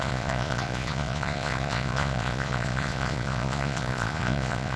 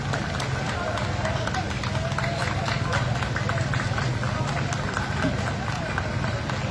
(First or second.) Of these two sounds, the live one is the second